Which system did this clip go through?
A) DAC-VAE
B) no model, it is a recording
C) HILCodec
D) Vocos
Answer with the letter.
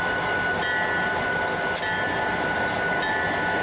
B